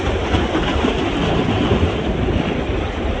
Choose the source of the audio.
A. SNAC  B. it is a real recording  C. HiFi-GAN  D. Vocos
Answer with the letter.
B